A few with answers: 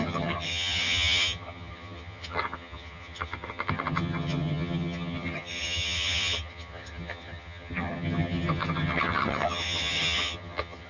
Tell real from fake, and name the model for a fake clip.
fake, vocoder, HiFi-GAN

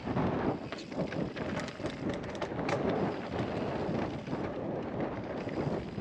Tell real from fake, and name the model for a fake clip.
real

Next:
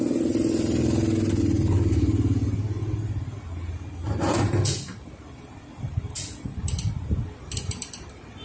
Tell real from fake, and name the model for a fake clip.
real